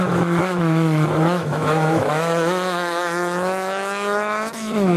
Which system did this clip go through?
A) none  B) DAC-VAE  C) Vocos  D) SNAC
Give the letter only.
B